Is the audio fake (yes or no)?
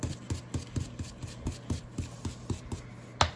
no